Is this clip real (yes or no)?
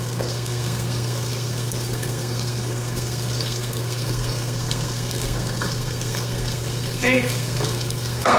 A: no